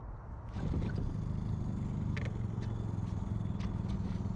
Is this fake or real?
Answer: real